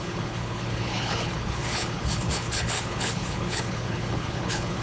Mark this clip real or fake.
fake